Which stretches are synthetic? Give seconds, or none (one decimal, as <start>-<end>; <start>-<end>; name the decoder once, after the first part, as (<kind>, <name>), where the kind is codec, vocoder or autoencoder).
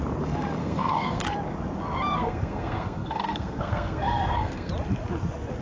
0.6-1.2 (codec, SNAC); 2.1-4.7